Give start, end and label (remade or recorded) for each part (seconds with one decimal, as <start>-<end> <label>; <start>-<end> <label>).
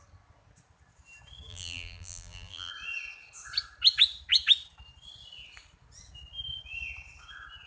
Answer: 0.0-1.5 recorded; 1.5-2.7 remade; 2.7-7.7 recorded